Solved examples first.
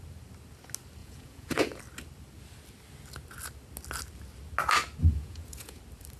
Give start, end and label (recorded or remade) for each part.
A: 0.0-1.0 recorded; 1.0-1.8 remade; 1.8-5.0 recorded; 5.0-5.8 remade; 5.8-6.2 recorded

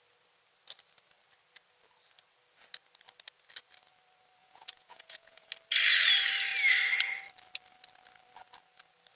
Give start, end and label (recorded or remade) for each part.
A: 0.0-4.4 recorded; 4.4-5.5 remade; 5.5-9.2 recorded

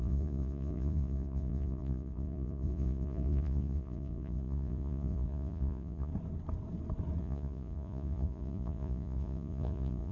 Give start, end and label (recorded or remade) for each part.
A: 0.0-6.1 remade; 6.1-7.2 recorded; 7.2-10.1 remade

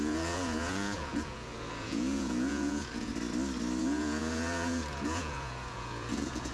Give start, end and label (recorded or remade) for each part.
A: 0.0-3.1 remade; 3.1-3.8 recorded; 3.8-6.5 remade